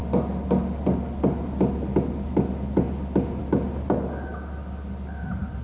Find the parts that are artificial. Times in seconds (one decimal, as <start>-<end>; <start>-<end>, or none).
none